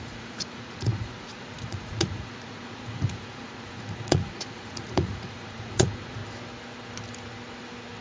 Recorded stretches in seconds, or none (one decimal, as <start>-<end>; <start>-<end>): 6.2-8.0